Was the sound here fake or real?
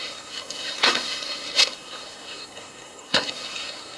fake